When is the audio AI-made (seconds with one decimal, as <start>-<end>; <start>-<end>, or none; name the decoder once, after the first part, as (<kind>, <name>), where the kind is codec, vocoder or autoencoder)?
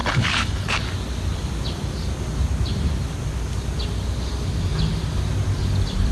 0.0-0.8 (codec, HILCodec)